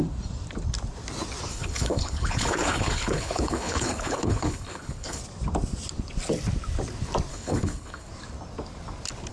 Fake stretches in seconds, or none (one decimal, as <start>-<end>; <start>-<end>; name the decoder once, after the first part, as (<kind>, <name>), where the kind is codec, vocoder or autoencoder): 1.5-5.2 (codec, HILCodec); 7.3-8.1

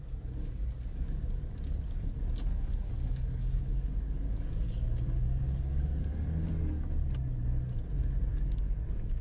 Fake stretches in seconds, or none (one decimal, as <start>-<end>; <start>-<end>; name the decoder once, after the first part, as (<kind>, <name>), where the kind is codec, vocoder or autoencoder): 2.5-6.1 (codec, DAC); 8.3-9.2

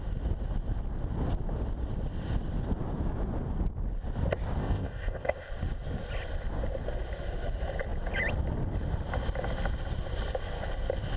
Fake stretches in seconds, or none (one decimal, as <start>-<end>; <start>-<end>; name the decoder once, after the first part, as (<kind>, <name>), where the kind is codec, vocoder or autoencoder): 4.6-5.5 (codec, ZipCodec)

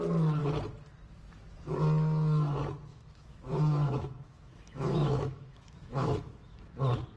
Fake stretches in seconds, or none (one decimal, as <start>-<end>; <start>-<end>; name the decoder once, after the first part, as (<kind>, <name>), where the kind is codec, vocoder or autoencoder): 2.9-6.6 (autoencoder, DAC-VAE)

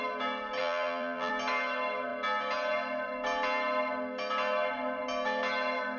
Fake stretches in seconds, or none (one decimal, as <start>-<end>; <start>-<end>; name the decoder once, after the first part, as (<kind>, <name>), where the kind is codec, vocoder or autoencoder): 0.6-1.3 (vocoder, BigVGAN v2)

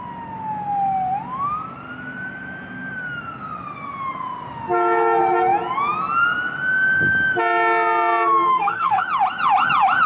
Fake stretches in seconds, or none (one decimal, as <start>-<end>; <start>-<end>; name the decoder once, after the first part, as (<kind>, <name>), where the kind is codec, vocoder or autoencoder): 8.5-9.0 (codec, SNAC)

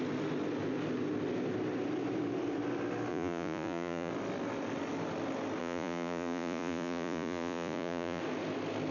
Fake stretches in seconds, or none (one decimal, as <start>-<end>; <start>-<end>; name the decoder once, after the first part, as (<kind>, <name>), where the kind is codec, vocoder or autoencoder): 3.1-4.1 (vocoder, Vocos); 5.6-8.2